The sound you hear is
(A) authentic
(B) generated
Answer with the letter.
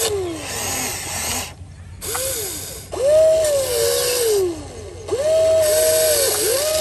A